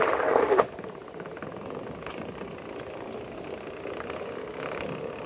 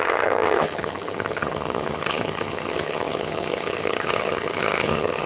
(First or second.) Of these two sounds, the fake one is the second